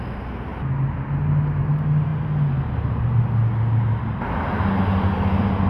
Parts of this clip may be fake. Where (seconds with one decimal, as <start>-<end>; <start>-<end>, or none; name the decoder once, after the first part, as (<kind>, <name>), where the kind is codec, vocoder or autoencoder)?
none